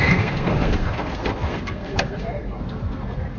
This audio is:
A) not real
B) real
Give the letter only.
A